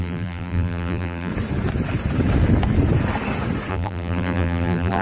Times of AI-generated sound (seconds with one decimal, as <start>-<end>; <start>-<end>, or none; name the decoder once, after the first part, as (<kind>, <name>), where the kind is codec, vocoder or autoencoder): 0.0-1.3 (vocoder, BigVGAN v2); 3.7-5.0